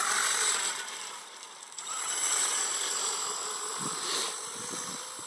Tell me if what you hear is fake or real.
fake